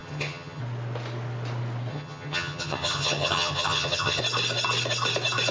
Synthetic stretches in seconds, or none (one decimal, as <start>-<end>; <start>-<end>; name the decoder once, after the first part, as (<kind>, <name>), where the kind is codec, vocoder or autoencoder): 0.0-0.6 (vocoder, HiFi-GAN); 1.9-4.2